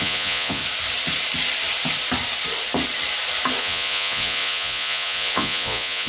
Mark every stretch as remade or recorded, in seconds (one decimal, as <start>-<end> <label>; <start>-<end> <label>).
0.0-0.6 remade; 0.6-3.6 recorded; 3.6-6.1 remade